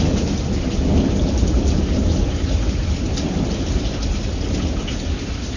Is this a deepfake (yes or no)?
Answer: no